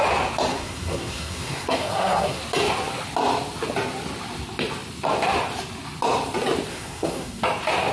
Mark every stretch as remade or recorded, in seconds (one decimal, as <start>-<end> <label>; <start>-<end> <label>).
0.0-0.5 recorded; 0.5-2.4 remade; 2.4-6.7 recorded; 6.7-7.4 remade; 7.4-7.9 recorded

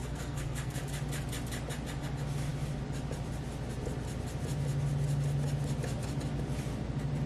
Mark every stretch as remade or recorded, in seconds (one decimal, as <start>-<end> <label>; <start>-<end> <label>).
0.0-0.8 remade; 0.8-7.3 recorded

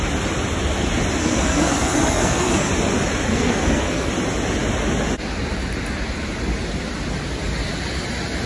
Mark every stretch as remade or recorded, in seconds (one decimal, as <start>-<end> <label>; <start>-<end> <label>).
0.0-1.2 recorded; 1.2-2.7 remade; 2.7-3.3 recorded; 3.3-4.1 remade; 4.1-8.5 recorded

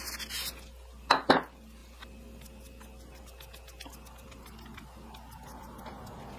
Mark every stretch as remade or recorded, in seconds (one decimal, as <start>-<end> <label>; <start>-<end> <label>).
0.0-6.4 recorded

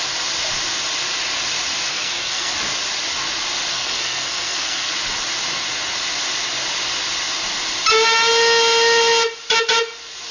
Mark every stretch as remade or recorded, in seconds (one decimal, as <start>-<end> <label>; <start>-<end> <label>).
0.0-1.9 recorded; 1.9-2.5 remade; 2.5-3.7 recorded; 3.7-4.9 remade; 4.9-10.3 recorded

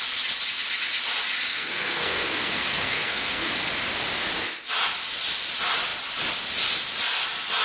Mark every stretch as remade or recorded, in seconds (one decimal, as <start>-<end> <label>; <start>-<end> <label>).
0.0-1.5 recorded; 1.5-3.5 remade; 3.5-7.6 recorded